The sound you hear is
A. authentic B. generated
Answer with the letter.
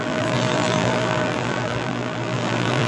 B